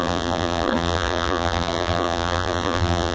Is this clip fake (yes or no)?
yes